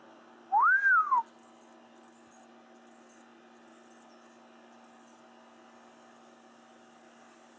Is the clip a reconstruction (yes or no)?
no